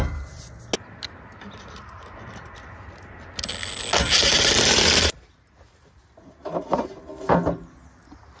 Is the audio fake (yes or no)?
no